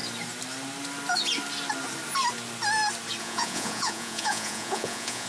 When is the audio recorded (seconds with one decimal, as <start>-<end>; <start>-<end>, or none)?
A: 0.0-3.2